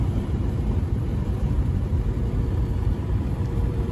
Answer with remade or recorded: remade